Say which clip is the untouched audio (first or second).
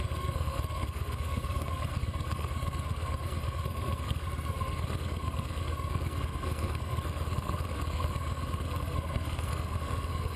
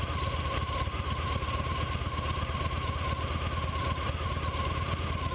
second